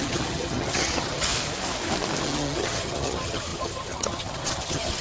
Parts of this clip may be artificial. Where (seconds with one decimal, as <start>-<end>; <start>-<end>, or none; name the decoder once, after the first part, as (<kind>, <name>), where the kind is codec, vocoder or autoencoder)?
0.0-1.3 (vocoder, HiFi-GAN); 2.2-5.0